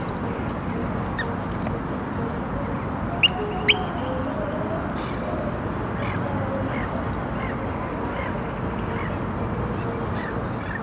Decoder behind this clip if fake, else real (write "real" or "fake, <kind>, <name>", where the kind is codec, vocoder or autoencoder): real